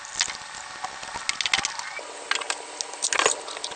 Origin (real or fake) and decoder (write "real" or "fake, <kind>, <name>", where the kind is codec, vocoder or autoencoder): real